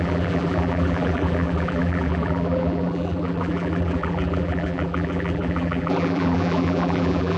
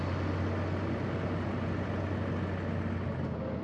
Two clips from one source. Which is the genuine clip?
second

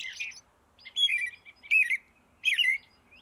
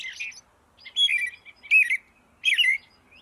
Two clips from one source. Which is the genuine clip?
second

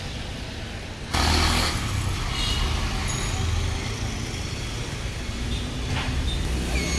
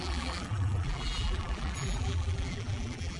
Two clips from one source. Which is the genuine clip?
first